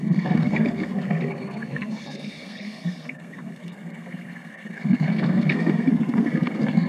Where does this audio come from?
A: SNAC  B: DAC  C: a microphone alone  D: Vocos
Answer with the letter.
A